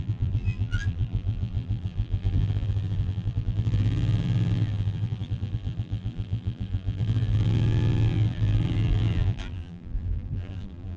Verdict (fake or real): fake